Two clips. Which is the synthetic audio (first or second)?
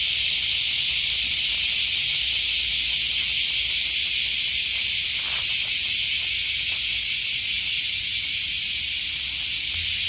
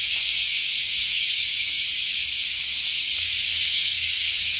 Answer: second